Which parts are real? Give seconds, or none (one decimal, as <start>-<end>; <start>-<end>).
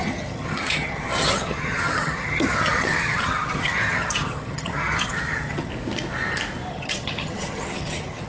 5.7-6.7